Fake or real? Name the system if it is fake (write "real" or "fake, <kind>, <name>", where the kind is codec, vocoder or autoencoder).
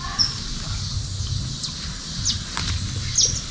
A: real